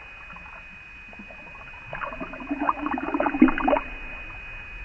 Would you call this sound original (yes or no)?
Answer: yes